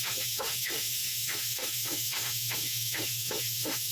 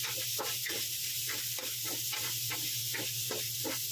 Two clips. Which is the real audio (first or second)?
second